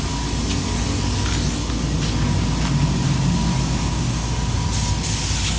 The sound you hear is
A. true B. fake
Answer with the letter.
A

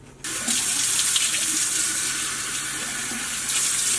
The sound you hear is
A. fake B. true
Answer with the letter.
B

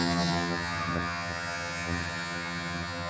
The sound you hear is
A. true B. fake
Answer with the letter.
B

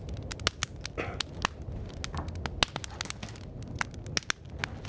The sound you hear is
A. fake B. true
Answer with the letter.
B